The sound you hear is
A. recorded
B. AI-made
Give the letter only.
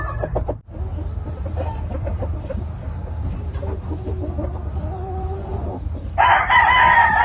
B